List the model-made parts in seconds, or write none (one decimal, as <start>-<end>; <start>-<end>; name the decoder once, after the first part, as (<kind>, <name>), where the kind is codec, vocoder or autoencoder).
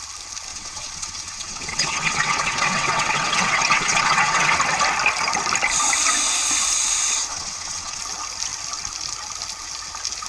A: 0.5-4.6 (vocoder, WaveNeXt); 7.3-8.0